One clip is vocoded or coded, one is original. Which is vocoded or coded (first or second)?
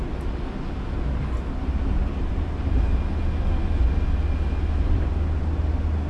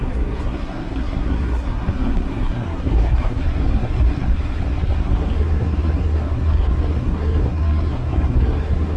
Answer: second